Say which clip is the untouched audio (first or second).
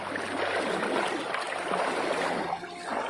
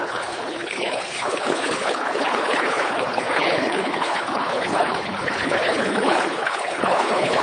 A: first